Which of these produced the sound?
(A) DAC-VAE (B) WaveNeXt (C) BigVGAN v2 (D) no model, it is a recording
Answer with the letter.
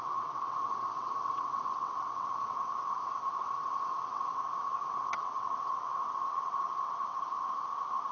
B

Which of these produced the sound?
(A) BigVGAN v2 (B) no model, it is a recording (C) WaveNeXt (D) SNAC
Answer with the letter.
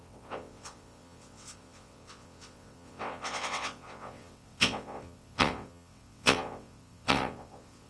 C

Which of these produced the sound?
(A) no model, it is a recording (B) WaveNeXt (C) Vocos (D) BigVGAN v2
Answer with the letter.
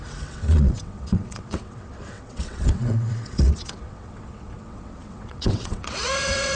B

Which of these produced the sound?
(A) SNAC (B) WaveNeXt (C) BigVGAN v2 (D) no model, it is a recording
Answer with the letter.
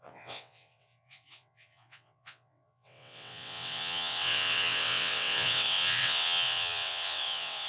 B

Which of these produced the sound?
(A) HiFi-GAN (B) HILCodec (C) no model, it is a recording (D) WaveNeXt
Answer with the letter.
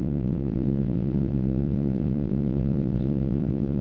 D